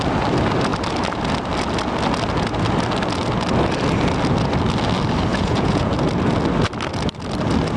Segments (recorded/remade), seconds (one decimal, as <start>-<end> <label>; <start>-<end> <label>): 0.0-5.3 recorded; 5.3-5.9 remade; 5.9-7.8 recorded